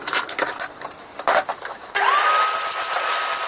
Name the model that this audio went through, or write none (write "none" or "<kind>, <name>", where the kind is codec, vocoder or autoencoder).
none